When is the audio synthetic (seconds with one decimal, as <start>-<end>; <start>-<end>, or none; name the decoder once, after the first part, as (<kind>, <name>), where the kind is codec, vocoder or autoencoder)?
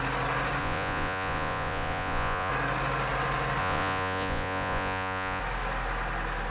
0.6-2.5 (vocoder, Vocos); 3.6-5.4